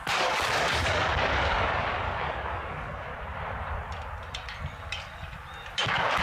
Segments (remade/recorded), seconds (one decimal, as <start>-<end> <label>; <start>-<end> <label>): 0.0-3.1 remade; 3.1-5.7 recorded; 5.7-6.2 remade

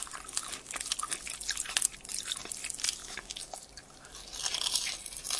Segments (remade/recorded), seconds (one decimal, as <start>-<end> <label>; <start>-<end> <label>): 0.0-3.0 recorded; 3.0-3.6 remade; 3.6-5.4 recorded

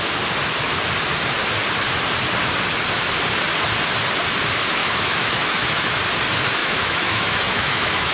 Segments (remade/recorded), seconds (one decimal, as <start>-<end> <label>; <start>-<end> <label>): 0.0-4.8 recorded; 4.8-6.0 remade; 6.0-6.6 recorded; 6.6-8.1 remade

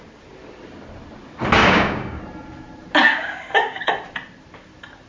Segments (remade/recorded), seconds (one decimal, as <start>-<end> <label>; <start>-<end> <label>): 0.0-1.6 recorded; 1.6-2.2 remade; 2.2-3.1 recorded; 3.1-3.9 remade; 3.9-5.1 recorded

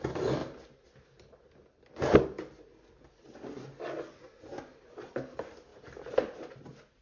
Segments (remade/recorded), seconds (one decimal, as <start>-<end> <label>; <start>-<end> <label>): 0.0-7.0 recorded